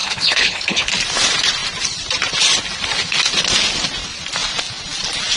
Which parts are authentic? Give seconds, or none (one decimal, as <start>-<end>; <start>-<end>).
0.9-5.4